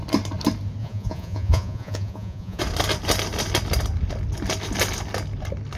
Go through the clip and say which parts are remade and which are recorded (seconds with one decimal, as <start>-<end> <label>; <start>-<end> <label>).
0.0-0.8 recorded; 0.8-2.6 remade; 2.6-5.8 recorded